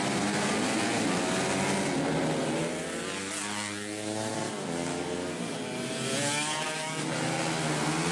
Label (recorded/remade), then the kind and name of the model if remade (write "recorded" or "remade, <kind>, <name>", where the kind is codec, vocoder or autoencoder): recorded